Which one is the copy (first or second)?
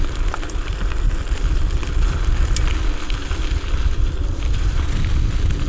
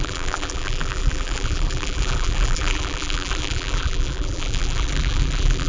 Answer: second